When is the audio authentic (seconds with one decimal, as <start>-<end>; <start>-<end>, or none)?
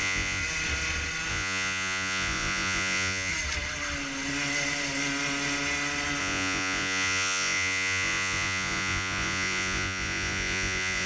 0.4-1.3; 3.3-6.2